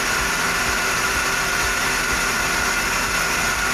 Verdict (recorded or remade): recorded